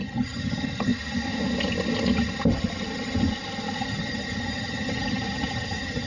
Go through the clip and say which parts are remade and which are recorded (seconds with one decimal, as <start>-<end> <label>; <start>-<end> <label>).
0.0-0.9 remade; 0.9-3.8 recorded; 3.8-6.1 remade

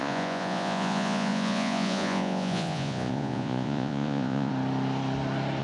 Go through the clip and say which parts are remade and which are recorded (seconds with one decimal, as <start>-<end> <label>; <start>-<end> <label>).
0.0-4.5 remade; 4.5-5.6 recorded